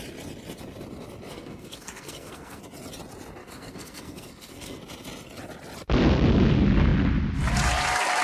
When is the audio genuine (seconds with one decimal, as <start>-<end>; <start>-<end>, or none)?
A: 0.0-1.3; 2.6-3.4; 4.8-8.2